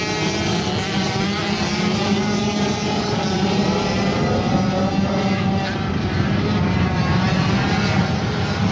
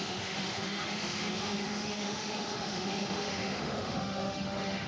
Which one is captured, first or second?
first